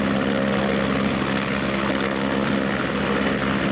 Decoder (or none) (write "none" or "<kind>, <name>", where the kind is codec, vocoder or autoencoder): none